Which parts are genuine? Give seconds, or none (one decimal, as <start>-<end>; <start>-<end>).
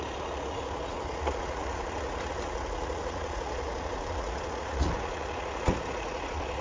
none